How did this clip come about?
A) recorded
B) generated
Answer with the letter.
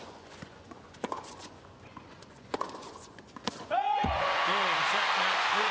B